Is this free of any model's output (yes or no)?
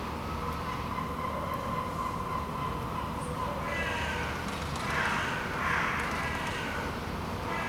yes